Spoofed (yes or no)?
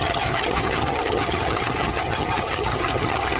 yes